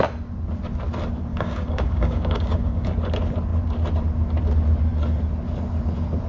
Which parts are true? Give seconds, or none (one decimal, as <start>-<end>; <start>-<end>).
0.0-1.3; 2.9-6.3